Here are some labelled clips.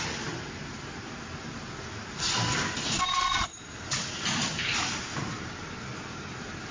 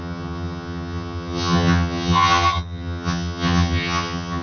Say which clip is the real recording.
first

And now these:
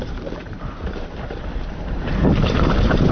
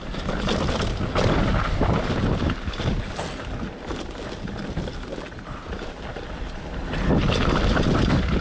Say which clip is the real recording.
second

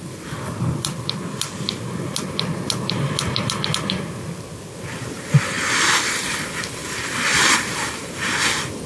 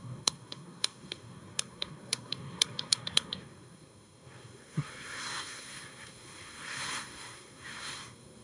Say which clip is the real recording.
first